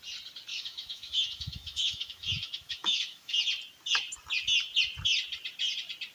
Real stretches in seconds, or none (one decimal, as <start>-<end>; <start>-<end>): 0.0-0.5; 3.4-6.1